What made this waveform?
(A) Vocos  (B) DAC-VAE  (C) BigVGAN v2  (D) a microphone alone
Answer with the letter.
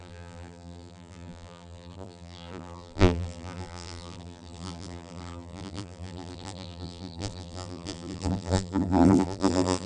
C